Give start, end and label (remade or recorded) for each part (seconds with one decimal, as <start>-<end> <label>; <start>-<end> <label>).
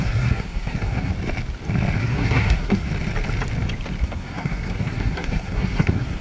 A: 0.0-1.1 remade; 1.1-2.0 recorded; 2.0-2.9 remade; 2.9-4.0 recorded; 4.0-6.2 remade